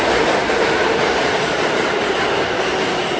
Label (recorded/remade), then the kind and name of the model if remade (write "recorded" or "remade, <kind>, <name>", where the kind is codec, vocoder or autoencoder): recorded